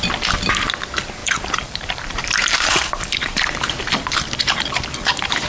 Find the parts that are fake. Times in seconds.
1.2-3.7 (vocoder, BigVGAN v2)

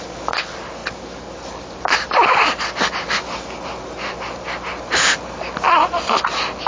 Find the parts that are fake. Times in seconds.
none

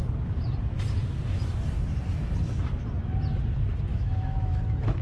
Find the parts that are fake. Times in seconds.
3.9-4.6 (autoencoder, DAC-VAE)

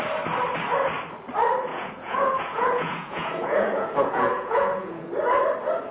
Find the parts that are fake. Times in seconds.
1.7-5.1 (vocoder, Vocos)

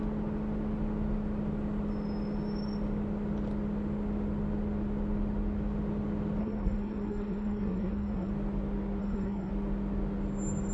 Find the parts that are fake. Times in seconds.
6.4-8.3 (codec, SNAC); 9.0-9.5